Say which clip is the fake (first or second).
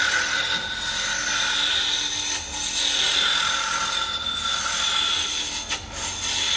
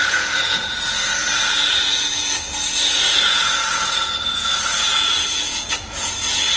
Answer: second